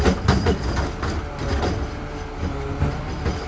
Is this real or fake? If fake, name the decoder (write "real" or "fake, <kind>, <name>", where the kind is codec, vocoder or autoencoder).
real